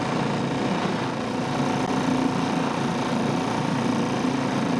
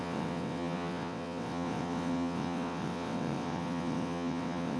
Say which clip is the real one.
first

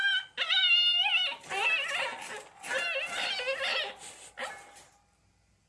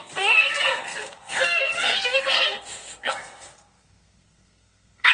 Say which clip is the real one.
first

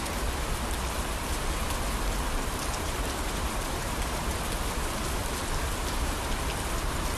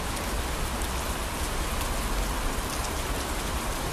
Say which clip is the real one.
second